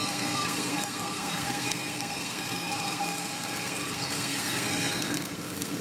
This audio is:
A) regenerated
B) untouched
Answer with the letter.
A